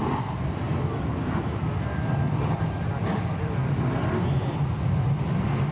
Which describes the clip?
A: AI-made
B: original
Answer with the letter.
B